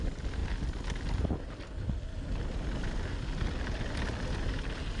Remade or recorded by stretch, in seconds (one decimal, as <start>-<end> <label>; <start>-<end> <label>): 0.0-5.0 recorded